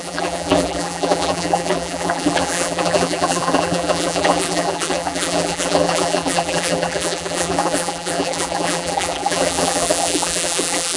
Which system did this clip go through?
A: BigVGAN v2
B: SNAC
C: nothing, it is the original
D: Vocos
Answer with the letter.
A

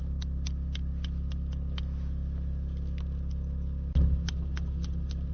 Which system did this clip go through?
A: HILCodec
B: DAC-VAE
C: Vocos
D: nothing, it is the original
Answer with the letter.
D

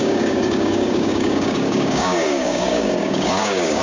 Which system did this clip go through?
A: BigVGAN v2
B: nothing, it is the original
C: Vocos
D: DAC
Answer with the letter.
D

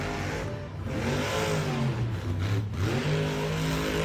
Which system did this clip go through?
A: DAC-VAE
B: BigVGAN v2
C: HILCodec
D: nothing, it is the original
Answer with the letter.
D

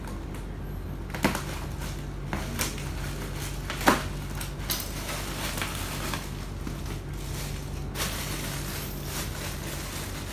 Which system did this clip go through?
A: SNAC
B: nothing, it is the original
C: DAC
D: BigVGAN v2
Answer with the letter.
B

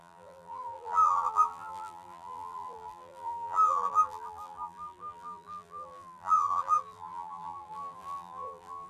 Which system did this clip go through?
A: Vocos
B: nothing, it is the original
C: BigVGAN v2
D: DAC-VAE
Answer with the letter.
C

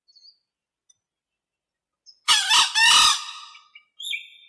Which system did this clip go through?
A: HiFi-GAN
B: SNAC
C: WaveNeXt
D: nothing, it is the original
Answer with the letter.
D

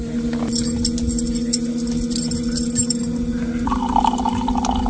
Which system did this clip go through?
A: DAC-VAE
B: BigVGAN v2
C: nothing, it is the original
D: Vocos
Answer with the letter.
C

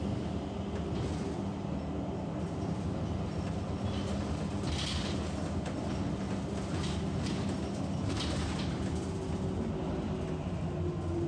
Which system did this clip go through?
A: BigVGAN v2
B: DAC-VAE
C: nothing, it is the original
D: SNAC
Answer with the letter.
C